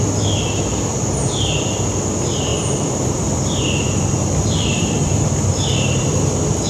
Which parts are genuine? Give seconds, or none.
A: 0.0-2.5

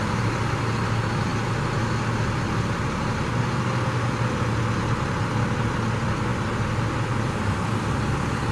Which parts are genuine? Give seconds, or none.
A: 0.0-8.5

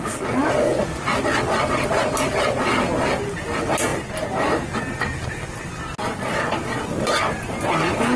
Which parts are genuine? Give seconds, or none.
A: 0.0-8.2

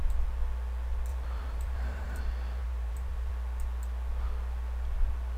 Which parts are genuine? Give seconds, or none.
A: 0.0-1.1; 2.2-2.6; 3.3-5.4

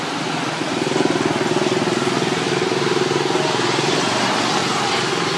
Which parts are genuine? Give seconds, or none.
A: 0.0-5.4

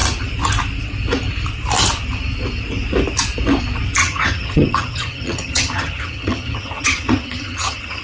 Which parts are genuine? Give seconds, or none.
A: 0.0-4.0